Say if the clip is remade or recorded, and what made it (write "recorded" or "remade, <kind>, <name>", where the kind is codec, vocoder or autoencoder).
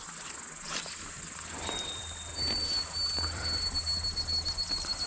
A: remade, vocoder, BigVGAN v2